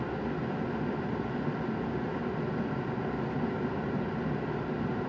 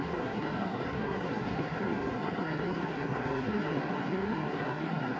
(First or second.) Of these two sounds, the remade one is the second